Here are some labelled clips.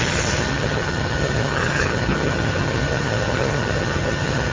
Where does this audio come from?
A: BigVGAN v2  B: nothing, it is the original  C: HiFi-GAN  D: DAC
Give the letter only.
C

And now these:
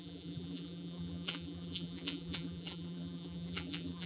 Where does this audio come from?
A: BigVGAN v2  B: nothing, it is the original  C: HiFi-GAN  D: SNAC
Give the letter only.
A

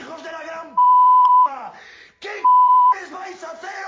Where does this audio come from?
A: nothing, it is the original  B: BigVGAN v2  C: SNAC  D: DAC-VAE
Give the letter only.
B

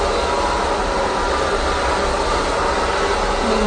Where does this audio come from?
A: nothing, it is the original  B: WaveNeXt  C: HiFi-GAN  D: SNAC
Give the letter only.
A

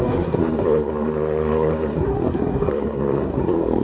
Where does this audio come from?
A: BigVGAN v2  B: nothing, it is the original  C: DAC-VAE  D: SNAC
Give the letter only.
D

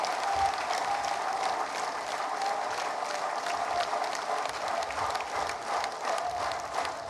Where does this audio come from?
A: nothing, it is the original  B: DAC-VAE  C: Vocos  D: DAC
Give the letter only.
A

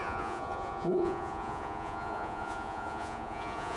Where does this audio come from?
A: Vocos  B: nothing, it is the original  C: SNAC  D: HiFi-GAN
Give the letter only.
A